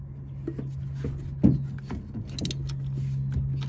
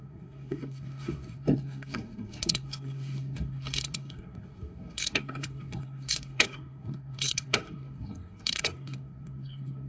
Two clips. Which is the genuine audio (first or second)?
first